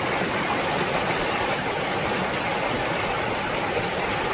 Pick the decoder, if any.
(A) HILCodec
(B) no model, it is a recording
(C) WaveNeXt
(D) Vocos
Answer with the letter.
B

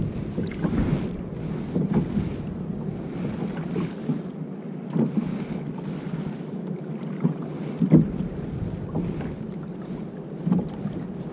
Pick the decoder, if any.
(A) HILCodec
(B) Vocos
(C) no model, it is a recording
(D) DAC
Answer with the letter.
C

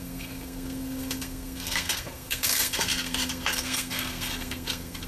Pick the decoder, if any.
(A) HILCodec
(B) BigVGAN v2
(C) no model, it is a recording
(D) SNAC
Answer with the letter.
D